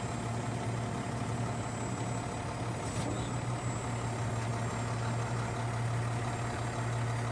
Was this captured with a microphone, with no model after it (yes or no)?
yes